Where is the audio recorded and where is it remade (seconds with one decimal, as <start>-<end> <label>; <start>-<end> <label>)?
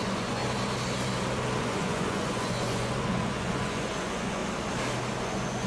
0.0-0.4 remade; 0.4-1.6 recorded; 1.6-4.4 remade; 4.4-5.2 recorded; 5.2-5.7 remade